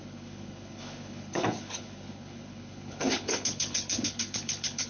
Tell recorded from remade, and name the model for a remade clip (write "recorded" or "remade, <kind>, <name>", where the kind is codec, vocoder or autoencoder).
remade, codec, HILCodec